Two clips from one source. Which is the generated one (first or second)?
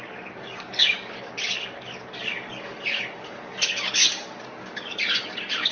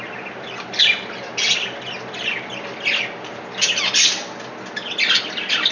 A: first